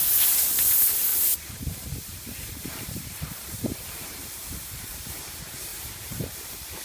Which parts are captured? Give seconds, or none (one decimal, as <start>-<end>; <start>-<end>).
0.0-1.1; 5.2-5.7